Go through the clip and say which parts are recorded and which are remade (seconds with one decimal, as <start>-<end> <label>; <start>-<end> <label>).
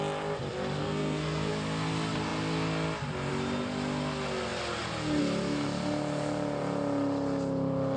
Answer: 0.0-0.8 recorded; 0.8-1.5 remade; 1.5-8.0 recorded